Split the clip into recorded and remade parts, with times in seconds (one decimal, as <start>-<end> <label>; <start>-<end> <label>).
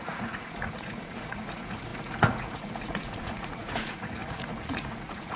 0.0-5.4 remade